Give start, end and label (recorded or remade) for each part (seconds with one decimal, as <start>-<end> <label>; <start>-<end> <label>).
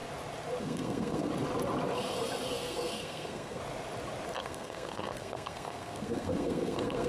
0.0-0.6 recorded; 0.6-1.3 remade; 1.3-2.5 recorded; 2.5-3.6 remade; 3.6-4.4 recorded; 4.4-7.1 remade